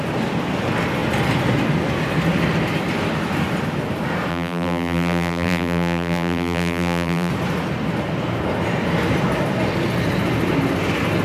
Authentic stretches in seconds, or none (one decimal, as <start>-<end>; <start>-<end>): 0.0-4.3; 7.3-11.2